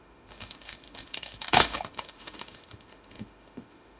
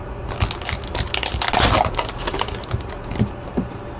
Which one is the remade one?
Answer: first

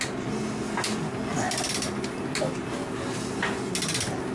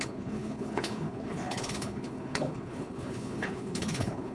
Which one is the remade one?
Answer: second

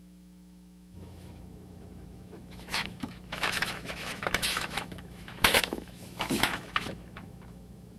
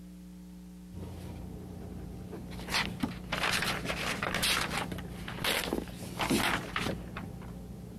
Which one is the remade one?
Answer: first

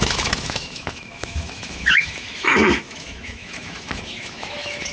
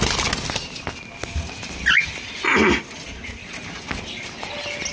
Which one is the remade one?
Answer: first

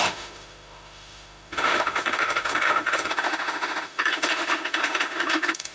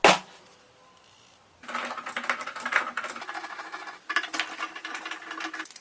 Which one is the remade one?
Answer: first